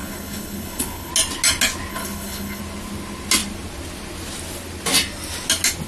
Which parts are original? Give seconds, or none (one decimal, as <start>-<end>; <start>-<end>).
1.1-1.9; 2.6-5.9